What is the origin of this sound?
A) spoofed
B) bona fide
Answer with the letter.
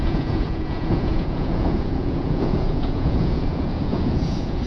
A